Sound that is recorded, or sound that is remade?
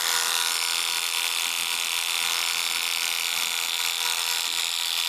recorded